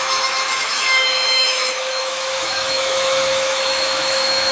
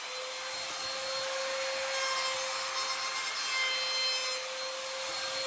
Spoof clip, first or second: first